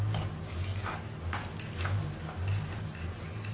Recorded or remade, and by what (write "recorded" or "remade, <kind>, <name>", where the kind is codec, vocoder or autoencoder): recorded